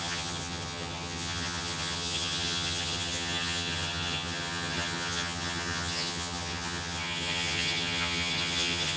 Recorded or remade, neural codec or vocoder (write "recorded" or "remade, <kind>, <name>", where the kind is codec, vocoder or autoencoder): remade, vocoder, HiFi-GAN